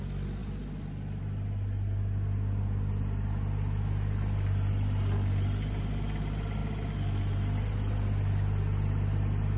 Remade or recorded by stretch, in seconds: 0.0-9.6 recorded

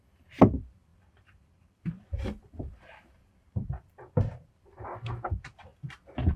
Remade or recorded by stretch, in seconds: 0.0-5.7 remade; 5.7-6.4 recorded

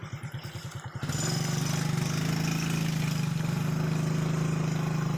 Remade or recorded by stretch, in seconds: 0.0-5.2 recorded

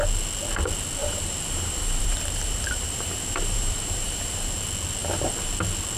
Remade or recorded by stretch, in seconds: 0.0-1.0 recorded; 1.0-4.6 remade; 4.6-5.0 recorded; 5.0-5.5 remade; 5.5-6.0 recorded

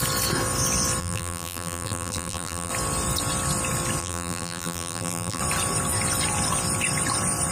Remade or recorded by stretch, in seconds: 0.0-1.0 recorded; 1.0-2.7 remade; 2.7-4.0 recorded; 4.0-5.4 remade; 5.4-7.5 recorded